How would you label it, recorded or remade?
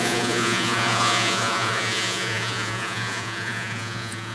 remade